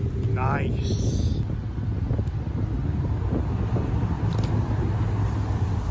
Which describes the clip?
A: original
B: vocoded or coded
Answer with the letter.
A